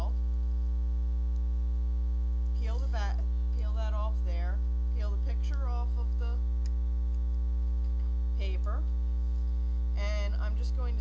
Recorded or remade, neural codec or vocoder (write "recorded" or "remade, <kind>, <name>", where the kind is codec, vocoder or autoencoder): recorded